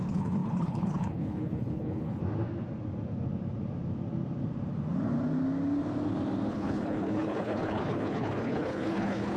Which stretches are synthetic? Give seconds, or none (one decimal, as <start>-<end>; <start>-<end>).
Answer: 0.0-2.2; 6.5-9.4

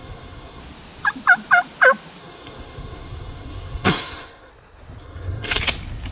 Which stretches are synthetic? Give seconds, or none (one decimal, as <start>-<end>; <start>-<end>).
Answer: 0.0-0.6; 2.2-4.5; 5.0-5.6

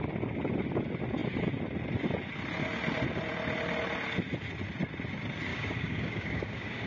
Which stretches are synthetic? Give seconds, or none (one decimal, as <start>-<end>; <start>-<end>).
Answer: 5.5-6.9

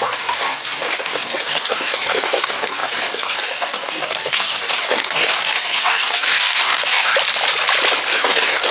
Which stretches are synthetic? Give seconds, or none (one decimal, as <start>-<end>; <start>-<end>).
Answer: 0.0-7.1; 8.1-8.7

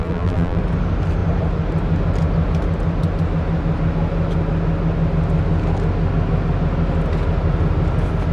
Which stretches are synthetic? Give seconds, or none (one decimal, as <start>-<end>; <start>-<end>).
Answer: 0.0-0.6

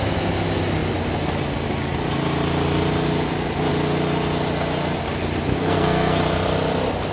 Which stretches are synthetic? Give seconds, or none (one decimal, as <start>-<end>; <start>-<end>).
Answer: 5.5-6.2

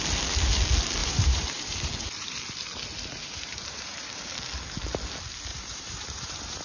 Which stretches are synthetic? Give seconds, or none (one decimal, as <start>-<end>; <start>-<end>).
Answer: 1.0-2.4; 3.2-4.3; 5.5-6.6

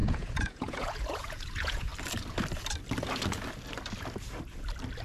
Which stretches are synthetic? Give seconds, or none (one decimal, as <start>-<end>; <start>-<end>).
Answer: 0.0-1.9